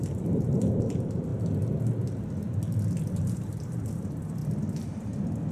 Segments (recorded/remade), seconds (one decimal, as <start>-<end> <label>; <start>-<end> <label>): 0.0-1.3 remade; 1.3-3.2 recorded; 3.2-4.4 remade; 4.4-5.5 recorded